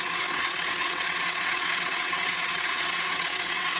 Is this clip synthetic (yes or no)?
yes